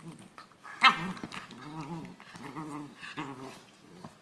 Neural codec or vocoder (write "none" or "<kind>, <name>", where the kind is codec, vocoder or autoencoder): none